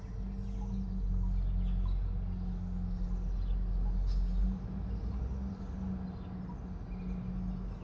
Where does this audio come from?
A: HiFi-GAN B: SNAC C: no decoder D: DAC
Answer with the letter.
C